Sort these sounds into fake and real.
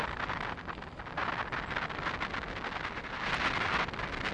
real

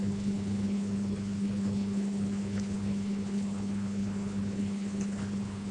fake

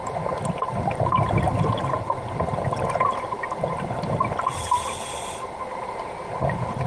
real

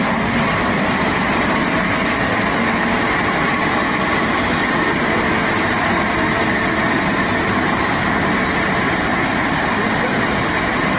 real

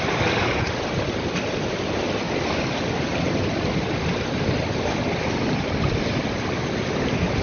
real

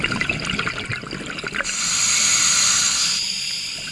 real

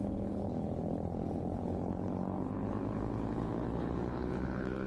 fake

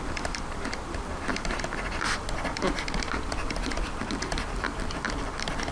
real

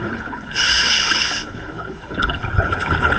fake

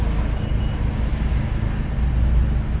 real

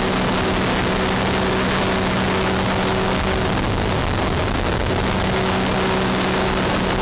real